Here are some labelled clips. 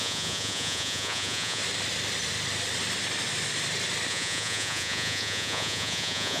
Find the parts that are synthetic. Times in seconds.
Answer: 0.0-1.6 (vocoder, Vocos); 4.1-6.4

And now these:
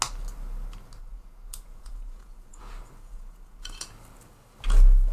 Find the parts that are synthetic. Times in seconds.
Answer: 1.0-2.6 (vocoder, Vocos); 3.0-3.9